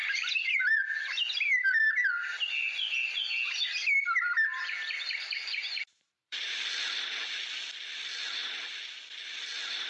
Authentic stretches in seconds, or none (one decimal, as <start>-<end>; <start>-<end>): 0.7-5.6; 6.7-9.9